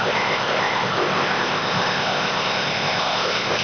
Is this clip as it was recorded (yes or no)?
no